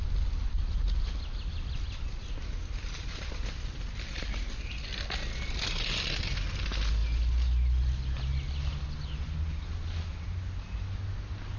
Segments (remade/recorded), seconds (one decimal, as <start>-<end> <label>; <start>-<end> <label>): 0.0-11.6 recorded